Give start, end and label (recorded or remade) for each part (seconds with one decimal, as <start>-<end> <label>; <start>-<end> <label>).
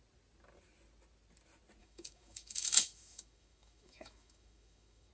0.0-1.8 recorded; 1.8-5.1 remade